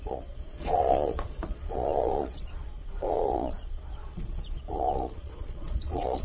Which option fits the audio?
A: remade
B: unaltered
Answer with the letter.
A